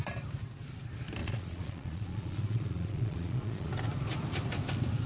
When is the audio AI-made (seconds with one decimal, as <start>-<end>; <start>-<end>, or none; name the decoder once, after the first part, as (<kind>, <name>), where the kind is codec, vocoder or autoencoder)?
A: 1.2-3.7 (vocoder, Vocos)